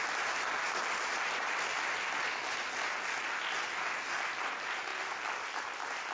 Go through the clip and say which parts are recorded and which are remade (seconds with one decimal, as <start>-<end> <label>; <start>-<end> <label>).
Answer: 0.0-6.1 recorded